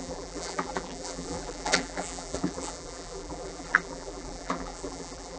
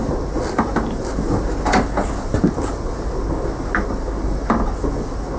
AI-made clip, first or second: first